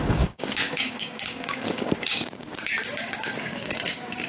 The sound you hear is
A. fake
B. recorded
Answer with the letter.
A